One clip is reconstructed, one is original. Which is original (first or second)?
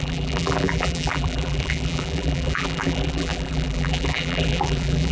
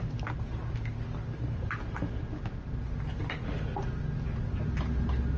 second